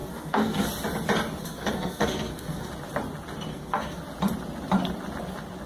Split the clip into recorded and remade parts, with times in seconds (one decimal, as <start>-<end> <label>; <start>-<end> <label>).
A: 0.0-0.7 remade; 0.7-1.4 recorded; 1.4-2.7 remade; 2.7-3.5 recorded; 3.5-4.0 remade; 4.0-5.7 recorded